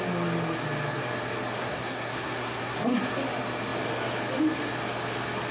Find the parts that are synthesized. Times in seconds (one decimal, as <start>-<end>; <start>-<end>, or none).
1.6-3.1